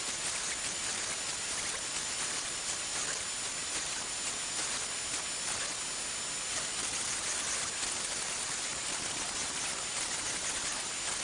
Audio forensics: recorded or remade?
recorded